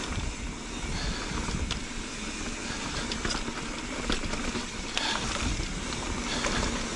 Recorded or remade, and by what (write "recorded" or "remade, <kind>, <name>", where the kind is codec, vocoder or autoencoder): recorded